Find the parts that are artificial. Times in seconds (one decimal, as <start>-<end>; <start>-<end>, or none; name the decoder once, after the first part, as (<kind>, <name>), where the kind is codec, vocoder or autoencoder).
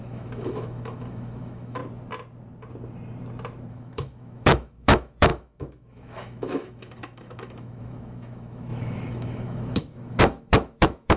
0.0-1.8 (autoencoder, DAC-VAE); 3.7-11.2